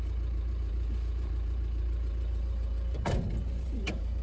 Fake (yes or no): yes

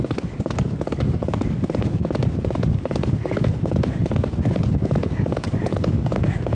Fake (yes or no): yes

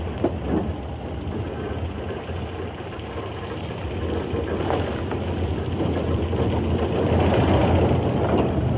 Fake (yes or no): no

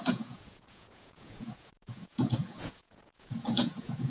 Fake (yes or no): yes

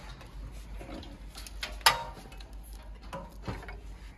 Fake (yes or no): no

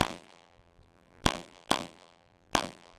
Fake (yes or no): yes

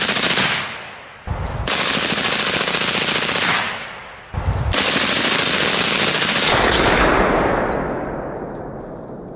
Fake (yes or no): no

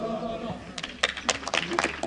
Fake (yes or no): no